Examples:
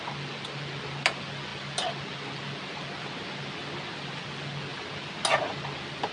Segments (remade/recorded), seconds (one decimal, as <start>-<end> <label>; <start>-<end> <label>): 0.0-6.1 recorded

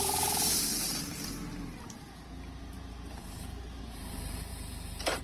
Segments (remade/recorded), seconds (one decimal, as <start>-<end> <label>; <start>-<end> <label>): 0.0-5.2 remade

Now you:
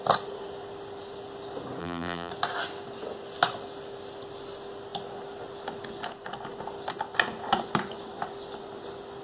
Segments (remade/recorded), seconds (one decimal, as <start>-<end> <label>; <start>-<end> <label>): 0.0-1.8 recorded; 1.8-2.3 remade; 2.3-9.2 recorded